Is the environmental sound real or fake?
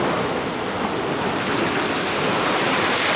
real